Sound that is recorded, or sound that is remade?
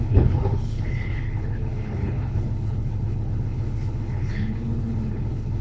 remade